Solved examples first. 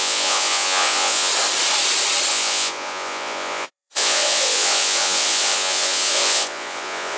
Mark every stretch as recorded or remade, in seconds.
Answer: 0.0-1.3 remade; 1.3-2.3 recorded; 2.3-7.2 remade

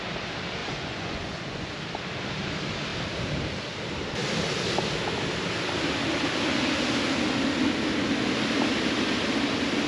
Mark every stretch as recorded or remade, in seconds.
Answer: 0.0-0.6 recorded; 0.6-1.7 remade; 1.7-9.9 recorded

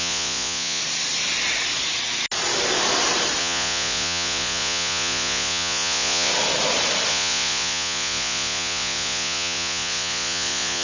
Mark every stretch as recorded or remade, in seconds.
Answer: 0.0-0.8 remade; 0.8-3.4 recorded; 3.4-6.3 remade; 6.3-7.1 recorded; 7.1-10.8 remade